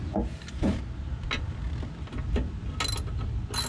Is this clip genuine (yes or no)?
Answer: yes